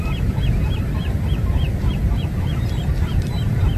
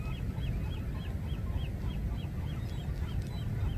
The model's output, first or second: first